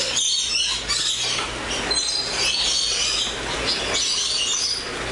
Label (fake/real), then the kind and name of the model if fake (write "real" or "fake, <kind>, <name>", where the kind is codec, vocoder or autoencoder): real